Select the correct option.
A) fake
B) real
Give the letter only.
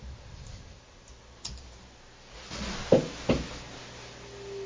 B